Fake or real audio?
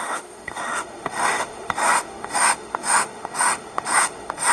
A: fake